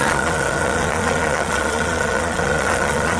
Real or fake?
fake